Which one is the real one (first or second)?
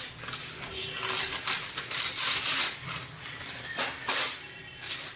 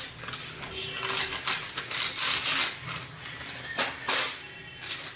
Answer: second